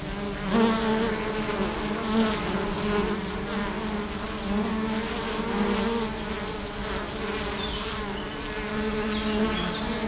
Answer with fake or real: real